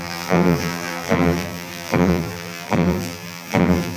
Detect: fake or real fake